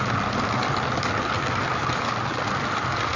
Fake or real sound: real